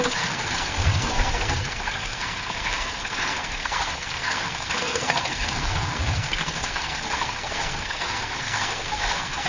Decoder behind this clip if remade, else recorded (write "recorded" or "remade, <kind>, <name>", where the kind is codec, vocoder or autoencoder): remade, codec, SNAC